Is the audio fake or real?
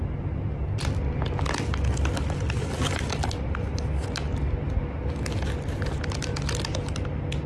real